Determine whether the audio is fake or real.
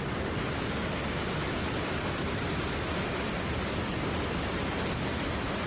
real